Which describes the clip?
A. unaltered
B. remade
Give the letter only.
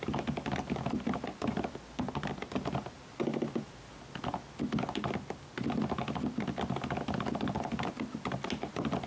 A